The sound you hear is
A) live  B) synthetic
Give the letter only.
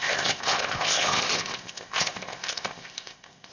B